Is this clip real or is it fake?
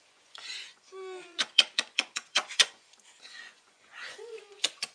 fake